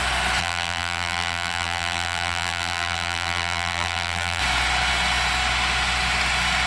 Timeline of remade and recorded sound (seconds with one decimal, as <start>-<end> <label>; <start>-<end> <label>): 0.0-0.4 recorded; 0.4-4.4 remade; 4.4-6.7 recorded